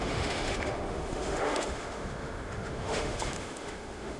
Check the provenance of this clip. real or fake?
fake